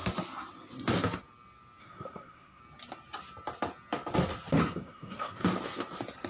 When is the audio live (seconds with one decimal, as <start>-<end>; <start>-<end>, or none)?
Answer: 0.0-1.8; 2.6-4.6; 5.4-6.3